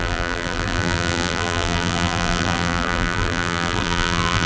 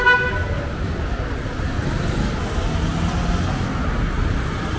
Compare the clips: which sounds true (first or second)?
second